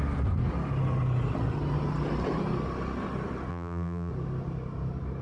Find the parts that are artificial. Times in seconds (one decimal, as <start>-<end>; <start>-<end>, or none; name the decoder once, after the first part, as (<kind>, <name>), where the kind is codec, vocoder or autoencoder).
3.5-4.1 (vocoder, BigVGAN v2)

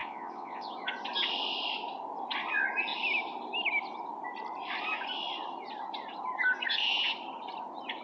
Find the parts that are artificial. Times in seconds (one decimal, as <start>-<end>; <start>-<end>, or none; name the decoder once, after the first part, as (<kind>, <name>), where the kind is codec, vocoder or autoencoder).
0.0-0.7 (vocoder, Vocos)